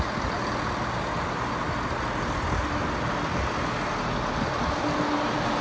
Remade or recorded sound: recorded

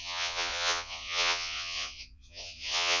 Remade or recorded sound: remade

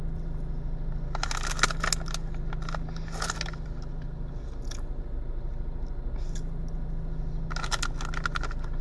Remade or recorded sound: recorded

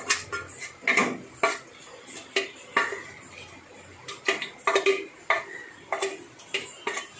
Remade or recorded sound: recorded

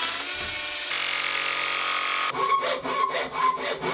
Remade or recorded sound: recorded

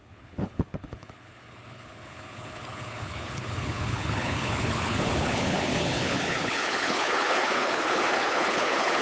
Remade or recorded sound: remade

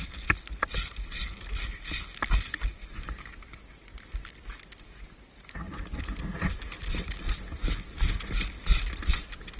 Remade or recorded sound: recorded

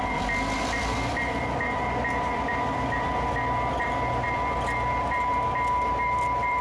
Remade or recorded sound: remade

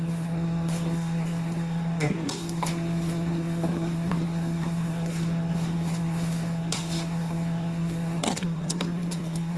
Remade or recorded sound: remade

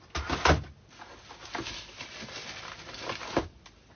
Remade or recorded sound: recorded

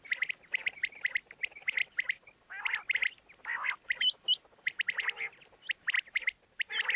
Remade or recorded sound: recorded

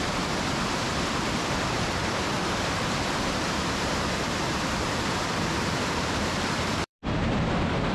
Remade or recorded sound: remade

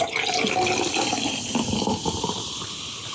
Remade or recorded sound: remade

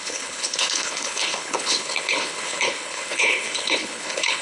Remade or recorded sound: remade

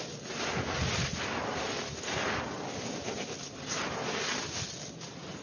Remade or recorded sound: recorded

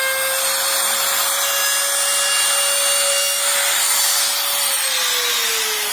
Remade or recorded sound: recorded